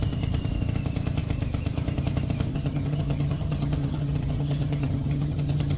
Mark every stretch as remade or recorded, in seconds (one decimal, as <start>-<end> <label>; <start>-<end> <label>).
0.0-2.5 recorded; 2.5-5.8 remade